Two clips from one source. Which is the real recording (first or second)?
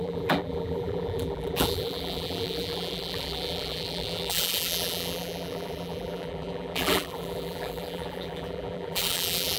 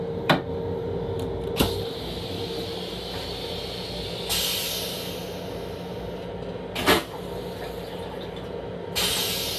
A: second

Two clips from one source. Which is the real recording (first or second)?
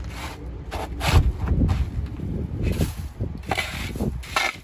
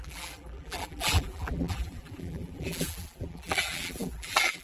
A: first